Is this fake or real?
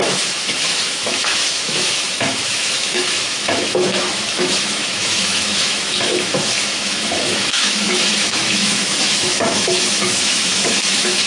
fake